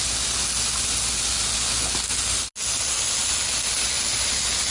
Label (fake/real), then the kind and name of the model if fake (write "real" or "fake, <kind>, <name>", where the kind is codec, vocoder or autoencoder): real